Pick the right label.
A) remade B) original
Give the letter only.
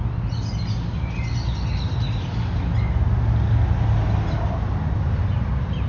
B